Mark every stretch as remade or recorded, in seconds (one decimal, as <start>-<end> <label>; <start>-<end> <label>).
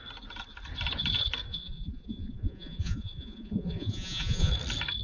0.0-1.5 recorded; 1.5-4.5 remade; 4.5-5.0 recorded